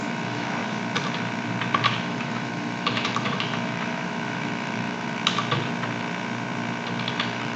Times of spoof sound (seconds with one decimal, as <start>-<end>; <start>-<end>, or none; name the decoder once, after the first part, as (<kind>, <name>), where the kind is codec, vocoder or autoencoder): 0.0-0.6 (autoencoder, DAC-VAE); 2.0-5.2; 7.1-7.6